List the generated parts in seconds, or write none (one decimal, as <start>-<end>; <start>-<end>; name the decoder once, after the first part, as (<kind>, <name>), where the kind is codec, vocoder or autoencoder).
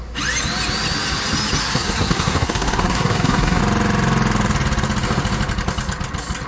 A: 1.6-3.6 (codec, SNAC)